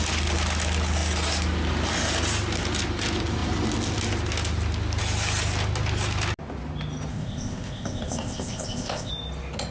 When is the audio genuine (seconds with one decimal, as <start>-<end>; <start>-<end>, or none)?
0.0-7.1; 9.1-9.7